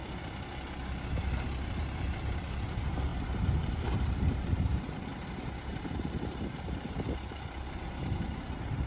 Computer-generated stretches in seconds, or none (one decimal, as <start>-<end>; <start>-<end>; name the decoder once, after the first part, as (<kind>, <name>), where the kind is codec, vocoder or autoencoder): 1.2-5.1 (vocoder, BigVGAN v2); 5.7-8.9